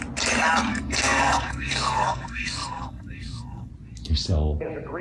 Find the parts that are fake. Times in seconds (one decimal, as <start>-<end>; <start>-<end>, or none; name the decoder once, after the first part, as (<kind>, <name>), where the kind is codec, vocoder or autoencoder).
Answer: 0.7-3.7 (codec, SNAC)